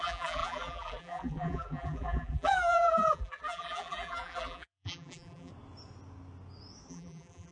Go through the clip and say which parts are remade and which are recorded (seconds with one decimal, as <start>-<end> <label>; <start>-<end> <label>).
0.0-5.5 remade; 5.5-6.9 recorded; 6.9-7.5 remade